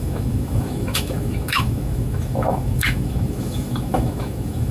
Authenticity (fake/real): fake